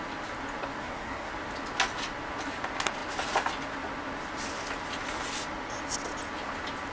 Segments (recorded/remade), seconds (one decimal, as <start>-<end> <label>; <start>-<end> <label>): 0.0-0.8 recorded; 0.8-1.3 remade; 1.3-6.9 recorded